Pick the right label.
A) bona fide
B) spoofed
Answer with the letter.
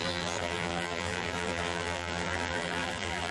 B